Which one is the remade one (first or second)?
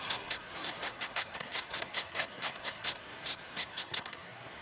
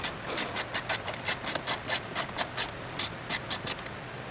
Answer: first